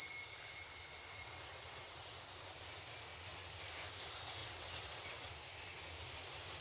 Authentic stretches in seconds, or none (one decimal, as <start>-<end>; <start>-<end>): 0.0-1.2; 2.2-4.4; 5.3-6.6